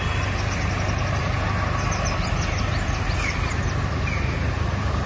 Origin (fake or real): real